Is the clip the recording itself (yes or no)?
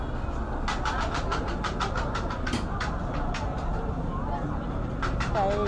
yes